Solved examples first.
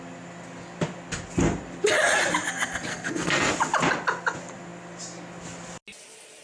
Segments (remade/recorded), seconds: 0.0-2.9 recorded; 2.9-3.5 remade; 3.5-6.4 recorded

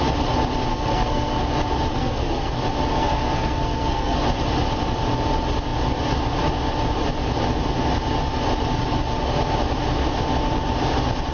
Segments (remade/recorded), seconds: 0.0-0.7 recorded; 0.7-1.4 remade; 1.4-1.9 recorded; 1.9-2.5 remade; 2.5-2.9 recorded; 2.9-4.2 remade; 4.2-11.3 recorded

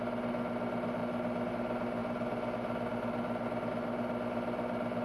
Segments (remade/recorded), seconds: 0.0-5.0 recorded

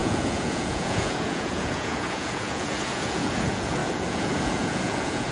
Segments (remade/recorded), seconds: 0.0-5.3 remade

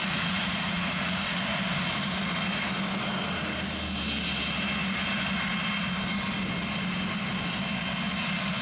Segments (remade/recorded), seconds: 0.0-1.4 remade; 1.4-8.6 recorded